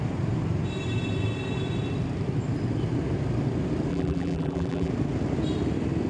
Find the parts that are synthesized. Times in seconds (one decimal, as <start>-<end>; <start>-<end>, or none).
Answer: 3.9-4.9